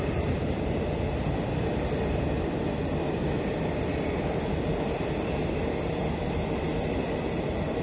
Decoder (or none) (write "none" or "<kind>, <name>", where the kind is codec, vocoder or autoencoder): none